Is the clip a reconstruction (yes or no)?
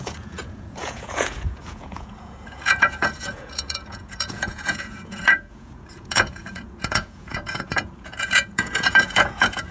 yes